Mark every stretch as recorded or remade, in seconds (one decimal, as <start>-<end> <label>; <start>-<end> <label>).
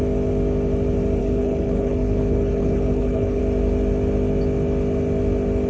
0.0-1.2 recorded; 1.2-3.4 remade; 3.4-5.7 recorded